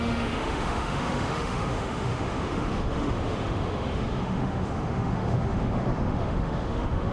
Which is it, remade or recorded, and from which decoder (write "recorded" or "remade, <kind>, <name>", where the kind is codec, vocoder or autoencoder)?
remade, autoencoder, DAC-VAE